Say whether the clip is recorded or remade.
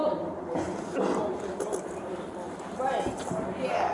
recorded